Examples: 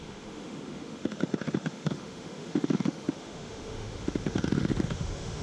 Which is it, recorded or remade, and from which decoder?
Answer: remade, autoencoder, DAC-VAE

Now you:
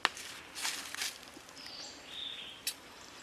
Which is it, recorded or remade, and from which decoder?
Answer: recorded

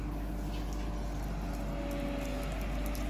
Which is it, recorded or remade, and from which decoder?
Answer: recorded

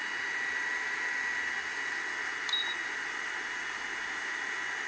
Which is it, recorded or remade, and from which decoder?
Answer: recorded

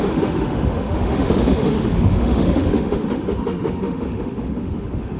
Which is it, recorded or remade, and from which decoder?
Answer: remade, autoencoder, DAC-VAE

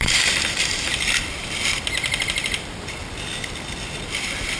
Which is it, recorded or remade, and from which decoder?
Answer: remade, vocoder, BigVGAN v2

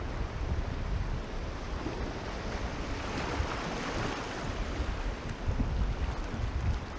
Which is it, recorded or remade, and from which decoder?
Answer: recorded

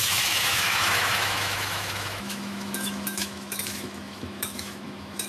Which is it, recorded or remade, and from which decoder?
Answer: remade, autoencoder, DAC-VAE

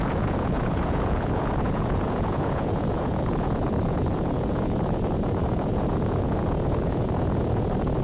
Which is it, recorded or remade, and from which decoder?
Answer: remade, vocoder, Vocos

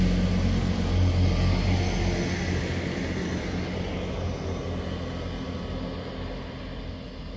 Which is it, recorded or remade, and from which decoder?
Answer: recorded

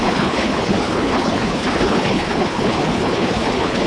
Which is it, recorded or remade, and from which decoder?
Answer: remade, codec, HILCodec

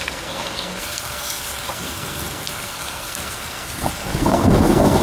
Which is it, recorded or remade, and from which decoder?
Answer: remade, codec, SNAC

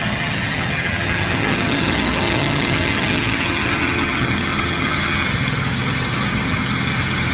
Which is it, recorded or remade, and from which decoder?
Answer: remade, vocoder, HiFi-GAN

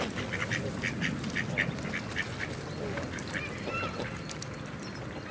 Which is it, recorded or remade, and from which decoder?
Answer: recorded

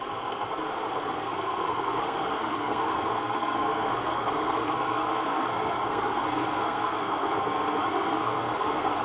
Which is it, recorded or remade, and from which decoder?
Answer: remade, codec, SNAC